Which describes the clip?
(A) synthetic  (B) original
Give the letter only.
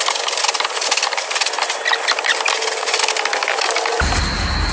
B